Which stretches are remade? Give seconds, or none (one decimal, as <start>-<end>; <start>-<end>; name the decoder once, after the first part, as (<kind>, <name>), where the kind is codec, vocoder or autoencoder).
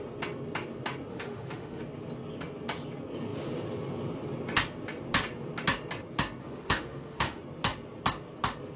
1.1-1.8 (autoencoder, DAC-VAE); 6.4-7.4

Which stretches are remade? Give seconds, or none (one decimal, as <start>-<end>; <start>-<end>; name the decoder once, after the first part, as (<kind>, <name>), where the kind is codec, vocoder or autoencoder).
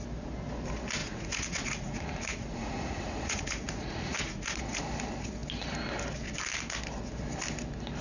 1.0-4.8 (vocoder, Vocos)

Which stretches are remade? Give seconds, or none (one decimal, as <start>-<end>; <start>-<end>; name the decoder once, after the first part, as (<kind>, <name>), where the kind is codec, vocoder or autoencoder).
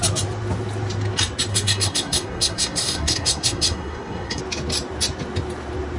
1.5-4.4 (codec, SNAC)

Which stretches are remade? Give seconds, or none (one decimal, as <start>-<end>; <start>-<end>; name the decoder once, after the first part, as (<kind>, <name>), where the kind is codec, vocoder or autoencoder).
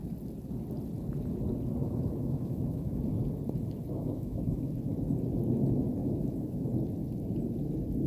1.8-3.0 (autoencoder, DAC-VAE); 4.0-4.7; 6.0-6.7